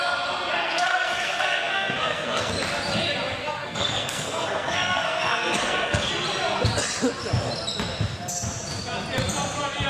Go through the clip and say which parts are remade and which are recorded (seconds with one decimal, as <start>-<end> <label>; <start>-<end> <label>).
0.0-0.6 recorded; 0.6-2.5 remade; 2.5-3.4 recorded; 3.4-6.1 remade; 6.1-9.9 recorded